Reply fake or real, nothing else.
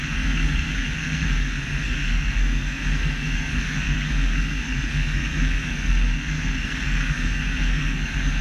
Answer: fake